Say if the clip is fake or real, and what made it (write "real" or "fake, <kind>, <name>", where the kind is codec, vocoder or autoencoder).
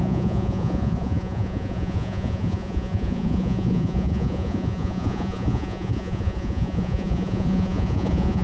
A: fake, vocoder, Vocos